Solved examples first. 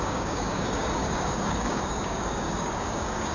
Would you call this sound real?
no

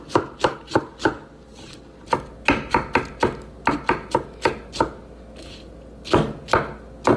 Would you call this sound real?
yes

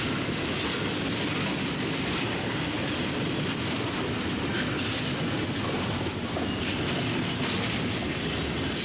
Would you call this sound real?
yes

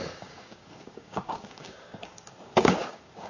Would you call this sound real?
no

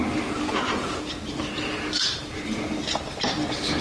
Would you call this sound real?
yes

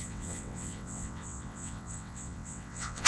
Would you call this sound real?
no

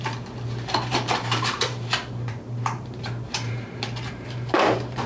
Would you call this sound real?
no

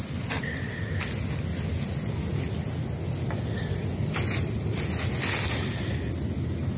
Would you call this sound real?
yes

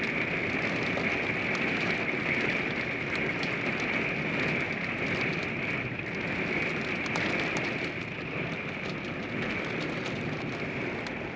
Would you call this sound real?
yes